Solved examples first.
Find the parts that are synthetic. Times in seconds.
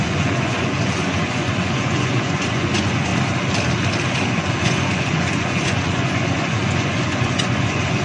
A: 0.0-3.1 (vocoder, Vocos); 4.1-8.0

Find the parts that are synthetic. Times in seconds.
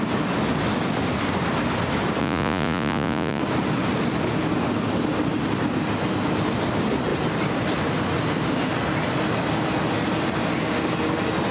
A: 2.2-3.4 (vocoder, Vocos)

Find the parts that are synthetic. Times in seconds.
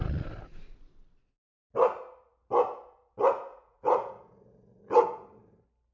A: 3.5-4.2 (vocoder, Vocos)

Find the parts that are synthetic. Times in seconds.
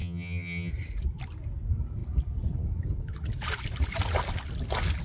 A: 0.0-0.7 (vocoder, HiFi-GAN)